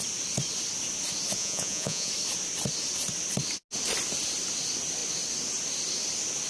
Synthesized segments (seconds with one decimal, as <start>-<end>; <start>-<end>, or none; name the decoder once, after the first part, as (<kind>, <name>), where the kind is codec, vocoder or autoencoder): 1.4-2.1 (vocoder, Vocos)